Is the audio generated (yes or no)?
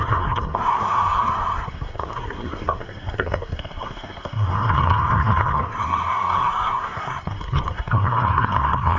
yes